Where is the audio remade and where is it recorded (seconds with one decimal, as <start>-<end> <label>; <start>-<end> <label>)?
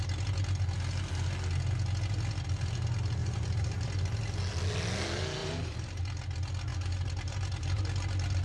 0.0-3.2 recorded; 3.2-3.9 remade; 3.9-5.4 recorded; 5.4-6.0 remade; 6.0-6.7 recorded; 6.7-7.8 remade; 7.8-8.4 recorded